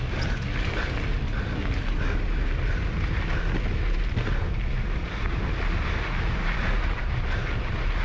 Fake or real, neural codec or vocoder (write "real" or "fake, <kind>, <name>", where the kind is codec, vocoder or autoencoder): real